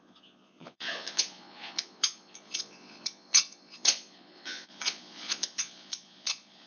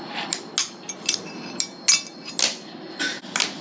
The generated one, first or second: first